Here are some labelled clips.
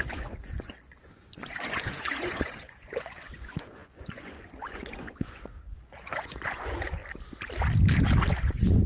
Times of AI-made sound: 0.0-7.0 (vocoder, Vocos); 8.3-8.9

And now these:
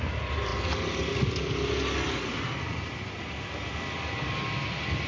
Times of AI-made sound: none